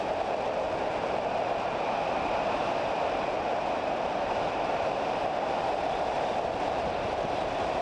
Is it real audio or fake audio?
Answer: real